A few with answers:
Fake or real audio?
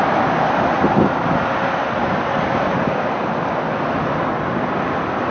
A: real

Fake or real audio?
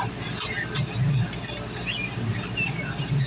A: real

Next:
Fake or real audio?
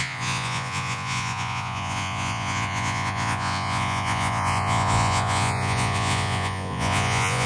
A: fake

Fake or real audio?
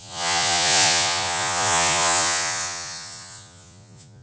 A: fake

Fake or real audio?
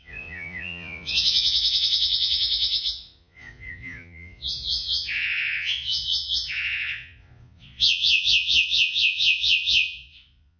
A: fake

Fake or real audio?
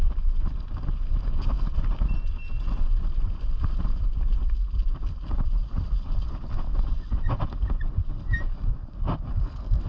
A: real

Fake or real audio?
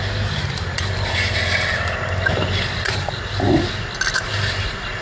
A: real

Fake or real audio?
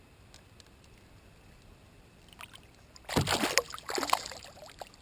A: real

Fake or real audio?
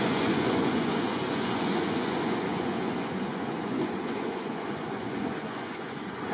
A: fake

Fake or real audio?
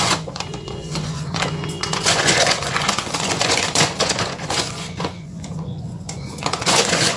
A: fake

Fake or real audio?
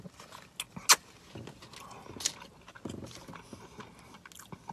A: real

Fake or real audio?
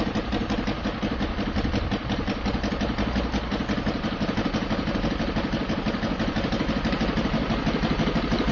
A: real